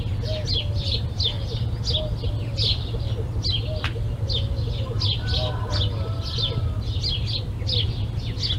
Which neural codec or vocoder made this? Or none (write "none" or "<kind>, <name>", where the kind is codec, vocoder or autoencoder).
none